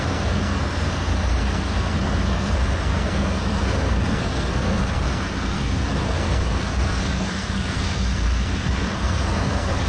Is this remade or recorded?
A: remade